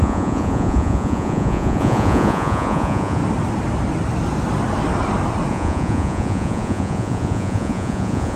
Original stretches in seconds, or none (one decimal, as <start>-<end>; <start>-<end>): 3.2-5.5